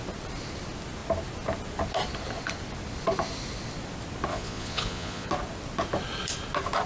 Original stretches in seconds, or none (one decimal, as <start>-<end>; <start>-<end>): 0.0-4.3; 5.3-6.9